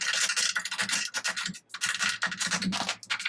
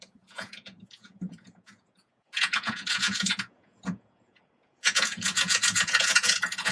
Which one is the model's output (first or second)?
second